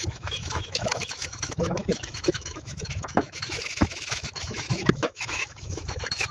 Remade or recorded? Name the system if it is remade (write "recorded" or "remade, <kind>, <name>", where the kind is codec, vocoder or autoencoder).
remade, autoencoder, DAC-VAE